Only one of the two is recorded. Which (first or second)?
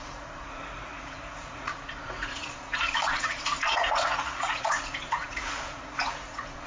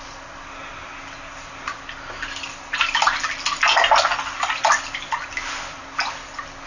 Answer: second